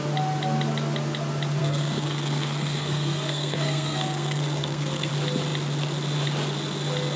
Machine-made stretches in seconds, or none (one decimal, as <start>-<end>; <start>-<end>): 1.6-5.1